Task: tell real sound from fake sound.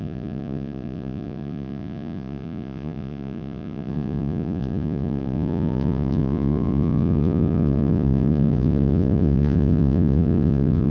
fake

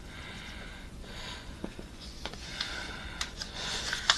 fake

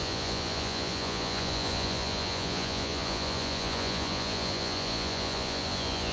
fake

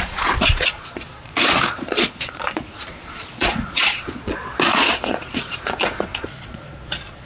fake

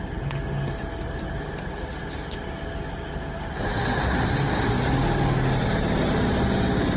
real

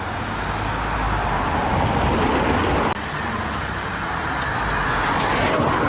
real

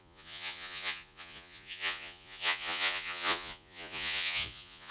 fake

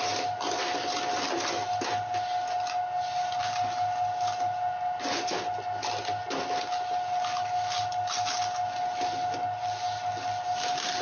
real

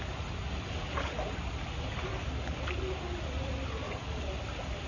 real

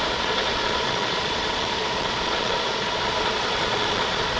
fake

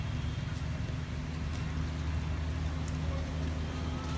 real